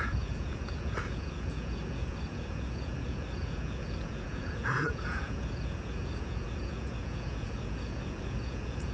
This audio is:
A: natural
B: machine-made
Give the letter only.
B